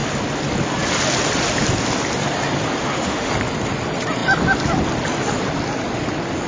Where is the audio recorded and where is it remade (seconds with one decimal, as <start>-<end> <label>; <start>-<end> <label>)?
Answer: 0.0-2.8 recorded; 2.8-3.3 remade; 3.3-6.5 recorded